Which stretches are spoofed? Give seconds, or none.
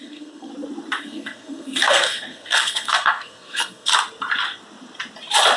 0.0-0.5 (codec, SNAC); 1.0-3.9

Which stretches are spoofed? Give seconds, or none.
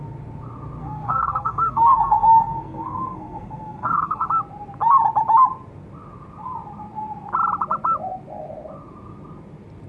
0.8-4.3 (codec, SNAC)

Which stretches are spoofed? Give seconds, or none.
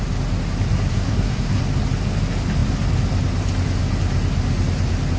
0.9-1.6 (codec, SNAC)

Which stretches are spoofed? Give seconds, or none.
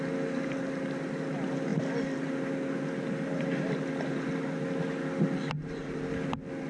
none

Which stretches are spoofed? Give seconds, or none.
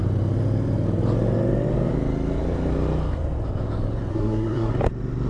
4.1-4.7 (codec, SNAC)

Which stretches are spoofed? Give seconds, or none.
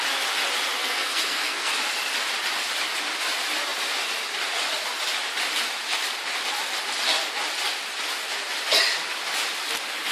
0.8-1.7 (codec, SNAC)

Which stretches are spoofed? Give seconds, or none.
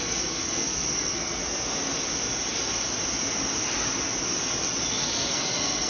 0.0-1.4 (codec, SNAC); 4.9-5.9